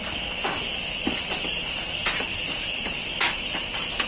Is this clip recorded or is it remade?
recorded